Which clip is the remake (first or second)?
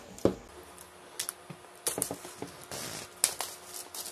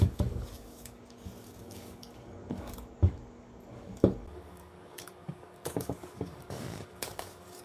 second